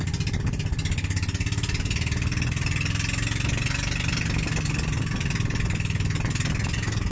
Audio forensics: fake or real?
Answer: real